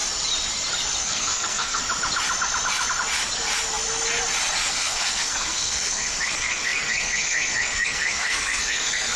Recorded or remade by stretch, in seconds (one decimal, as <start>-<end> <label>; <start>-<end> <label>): 0.0-1.0 recorded; 1.0-1.8 remade; 1.8-4.7 recorded; 4.7-9.2 remade